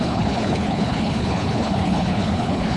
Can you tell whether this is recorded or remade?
remade